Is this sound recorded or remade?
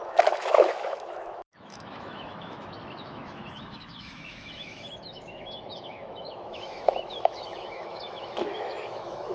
remade